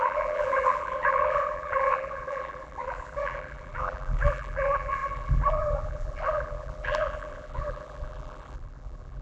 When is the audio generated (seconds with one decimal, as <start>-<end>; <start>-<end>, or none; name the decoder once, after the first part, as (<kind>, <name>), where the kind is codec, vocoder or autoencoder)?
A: 0.0-9.2 (vocoder, BigVGAN v2)

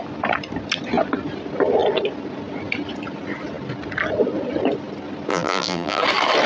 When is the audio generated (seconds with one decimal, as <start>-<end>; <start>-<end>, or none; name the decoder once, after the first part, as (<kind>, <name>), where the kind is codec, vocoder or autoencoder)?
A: 5.3-6.0 (vocoder, BigVGAN v2)

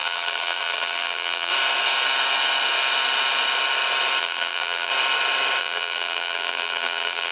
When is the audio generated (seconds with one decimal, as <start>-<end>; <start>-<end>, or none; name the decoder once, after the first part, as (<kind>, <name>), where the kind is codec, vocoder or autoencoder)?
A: 0.0-1.5 (vocoder, BigVGAN v2); 4.2-4.9; 5.6-7.3